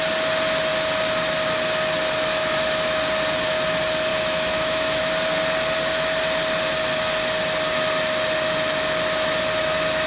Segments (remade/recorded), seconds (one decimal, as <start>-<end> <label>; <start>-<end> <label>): 0.0-4.1 recorded; 4.1-5.0 remade; 5.0-10.1 recorded